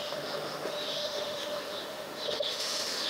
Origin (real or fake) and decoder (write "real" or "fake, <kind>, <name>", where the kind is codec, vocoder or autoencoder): fake, autoencoder, DAC-VAE